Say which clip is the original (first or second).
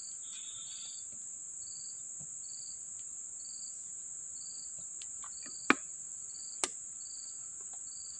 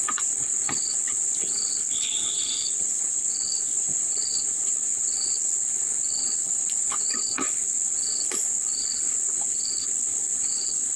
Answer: first